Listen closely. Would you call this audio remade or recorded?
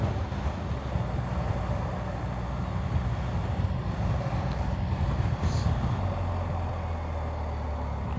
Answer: recorded